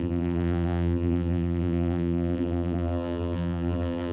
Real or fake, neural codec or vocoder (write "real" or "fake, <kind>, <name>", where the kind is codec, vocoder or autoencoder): fake, vocoder, BigVGAN v2